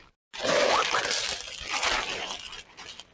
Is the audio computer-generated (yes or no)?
no